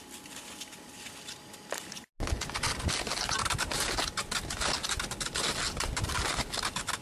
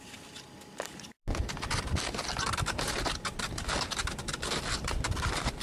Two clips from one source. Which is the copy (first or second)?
second